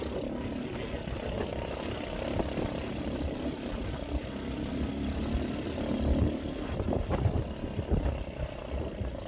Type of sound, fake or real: real